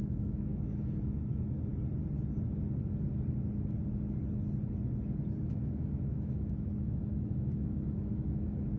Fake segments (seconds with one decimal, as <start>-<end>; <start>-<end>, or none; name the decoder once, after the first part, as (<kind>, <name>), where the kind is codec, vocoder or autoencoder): 0.0-1.7 (autoencoder, DAC-VAE); 5.4-8.8